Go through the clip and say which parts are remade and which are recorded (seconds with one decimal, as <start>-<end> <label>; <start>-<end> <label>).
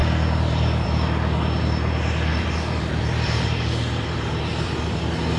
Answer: 0.0-2.3 recorded; 2.3-4.7 remade; 4.7-5.4 recorded